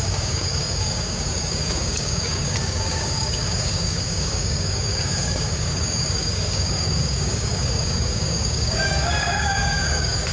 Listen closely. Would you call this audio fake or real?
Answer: fake